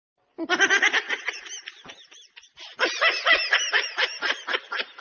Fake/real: real